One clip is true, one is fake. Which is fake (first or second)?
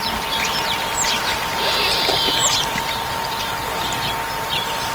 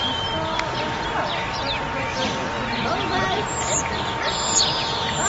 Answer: first